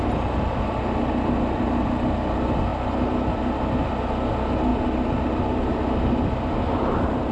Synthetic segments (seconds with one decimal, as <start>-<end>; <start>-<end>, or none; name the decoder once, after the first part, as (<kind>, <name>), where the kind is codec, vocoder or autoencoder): none